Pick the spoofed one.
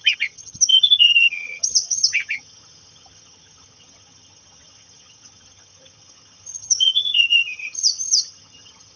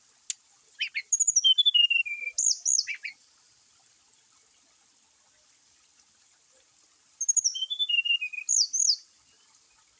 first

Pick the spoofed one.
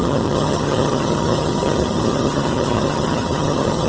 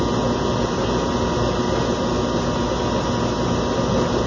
first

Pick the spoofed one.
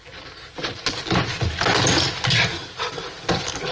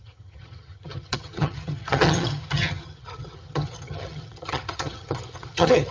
second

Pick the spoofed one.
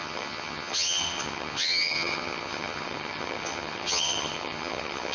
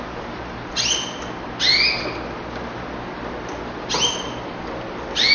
first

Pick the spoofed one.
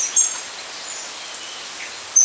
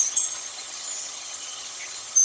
second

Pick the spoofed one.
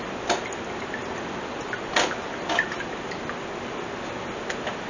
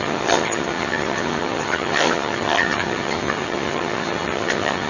second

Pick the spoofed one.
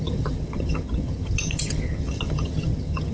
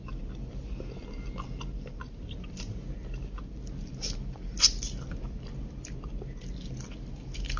first